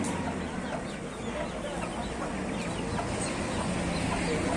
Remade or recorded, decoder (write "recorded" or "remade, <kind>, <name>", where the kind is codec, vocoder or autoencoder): recorded